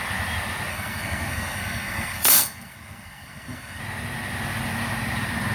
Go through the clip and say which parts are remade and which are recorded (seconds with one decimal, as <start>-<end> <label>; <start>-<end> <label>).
0.0-0.7 recorded; 0.7-3.8 remade; 3.8-5.5 recorded